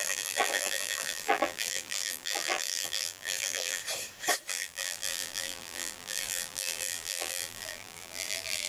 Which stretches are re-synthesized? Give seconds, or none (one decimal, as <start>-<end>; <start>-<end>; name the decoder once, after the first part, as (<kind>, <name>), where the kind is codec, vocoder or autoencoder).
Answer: 0.0-3.8 (vocoder, BigVGAN v2); 4.5-8.7